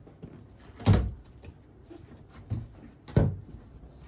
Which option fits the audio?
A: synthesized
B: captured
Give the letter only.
B